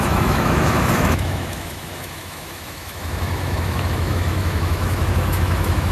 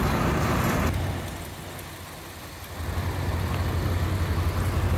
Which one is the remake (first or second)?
first